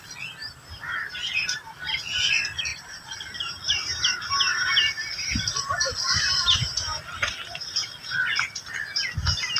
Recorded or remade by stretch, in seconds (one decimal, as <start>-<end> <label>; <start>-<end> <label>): 0.0-0.4 recorded; 0.4-1.8 remade; 1.8-2.7 recorded; 2.7-3.6 remade; 3.6-4.5 recorded; 4.5-7.3 remade; 7.3-9.6 recorded